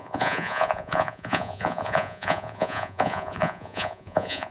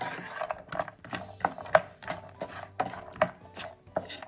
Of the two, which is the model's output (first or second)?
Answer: first